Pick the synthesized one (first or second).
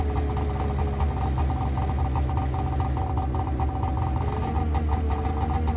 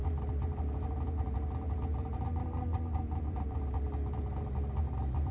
second